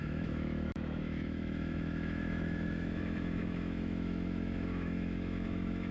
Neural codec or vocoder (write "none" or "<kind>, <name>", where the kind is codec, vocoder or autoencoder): autoencoder, DAC-VAE